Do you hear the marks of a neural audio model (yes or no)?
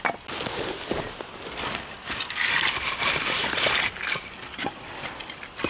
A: no